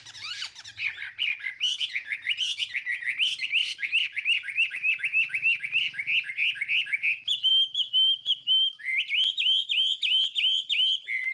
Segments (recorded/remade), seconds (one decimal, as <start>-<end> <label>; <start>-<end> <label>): 0.0-7.5 recorded; 7.5-8.8 remade; 8.8-11.3 recorded